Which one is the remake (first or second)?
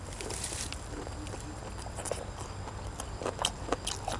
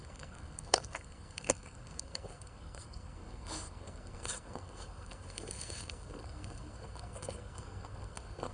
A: second